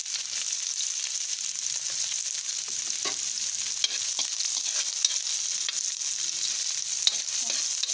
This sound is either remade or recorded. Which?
recorded